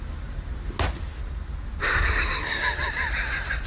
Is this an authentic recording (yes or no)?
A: yes